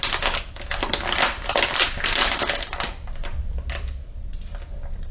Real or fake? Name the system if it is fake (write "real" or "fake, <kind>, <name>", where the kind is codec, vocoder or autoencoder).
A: real